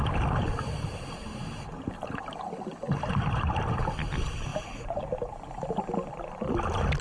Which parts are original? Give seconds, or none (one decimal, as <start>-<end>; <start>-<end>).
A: 0.0-4.5; 5.0-7.0